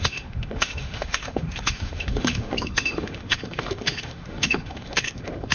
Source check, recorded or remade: remade